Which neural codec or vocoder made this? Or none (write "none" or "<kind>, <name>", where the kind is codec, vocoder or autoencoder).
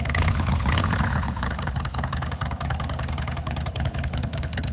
codec, HILCodec